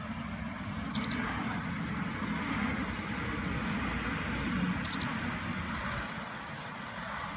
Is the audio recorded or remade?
recorded